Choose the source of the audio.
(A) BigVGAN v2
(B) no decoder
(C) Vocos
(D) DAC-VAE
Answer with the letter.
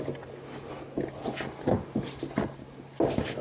B